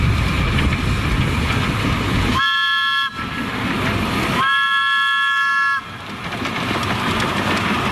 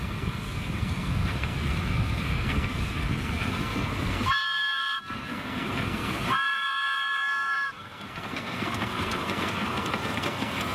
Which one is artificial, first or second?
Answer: second